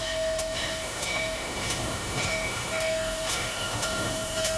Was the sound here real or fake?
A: fake